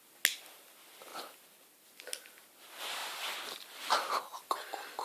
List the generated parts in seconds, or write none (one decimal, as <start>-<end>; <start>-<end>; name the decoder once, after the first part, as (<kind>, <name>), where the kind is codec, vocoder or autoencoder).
none